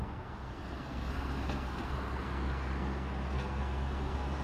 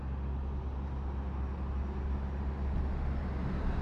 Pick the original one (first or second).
second